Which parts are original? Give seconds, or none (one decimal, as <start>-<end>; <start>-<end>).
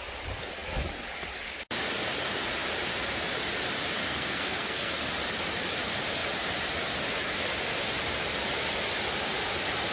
0.0-4.0; 5.1-9.9